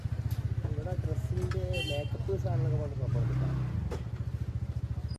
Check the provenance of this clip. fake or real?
real